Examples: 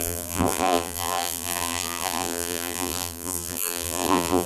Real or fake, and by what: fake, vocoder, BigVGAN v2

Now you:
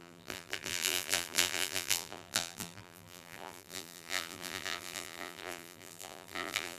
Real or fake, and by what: fake, vocoder, BigVGAN v2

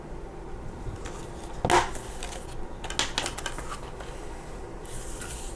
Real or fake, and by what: real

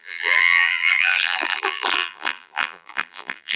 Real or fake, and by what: fake, vocoder, BigVGAN v2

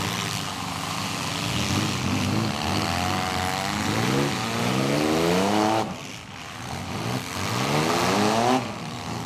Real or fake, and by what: real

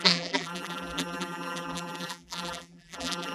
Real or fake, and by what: fake, vocoder, BigVGAN v2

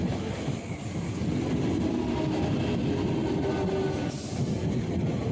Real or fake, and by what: real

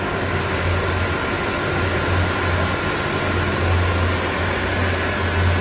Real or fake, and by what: real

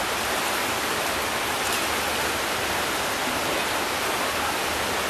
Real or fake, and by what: real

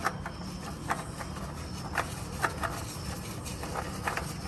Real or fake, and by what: real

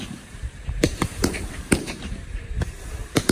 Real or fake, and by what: fake, vocoder, BigVGAN v2